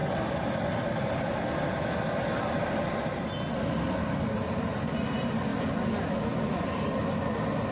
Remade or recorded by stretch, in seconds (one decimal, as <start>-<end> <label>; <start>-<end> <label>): 0.0-7.7 recorded